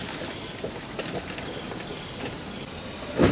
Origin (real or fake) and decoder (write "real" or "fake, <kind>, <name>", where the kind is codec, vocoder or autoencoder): real